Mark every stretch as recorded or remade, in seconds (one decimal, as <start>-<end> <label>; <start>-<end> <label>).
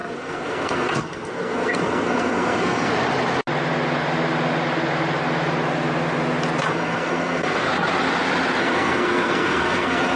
0.0-2.9 remade; 2.9-6.7 recorded; 6.7-7.7 remade; 7.7-8.6 recorded; 8.6-10.2 remade